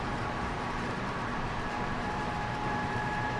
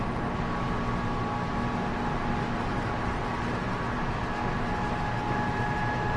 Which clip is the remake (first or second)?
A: first